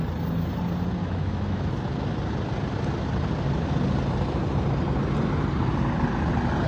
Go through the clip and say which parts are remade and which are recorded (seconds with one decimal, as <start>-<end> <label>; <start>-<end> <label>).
0.0-1.0 recorded; 1.0-1.7 remade; 1.7-6.7 recorded